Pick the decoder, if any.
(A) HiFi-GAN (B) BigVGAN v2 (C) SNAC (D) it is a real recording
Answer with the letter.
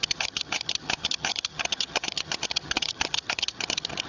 A